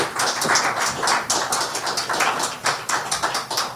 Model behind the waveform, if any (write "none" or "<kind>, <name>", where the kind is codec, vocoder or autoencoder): none